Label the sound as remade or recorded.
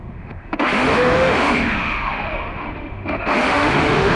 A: remade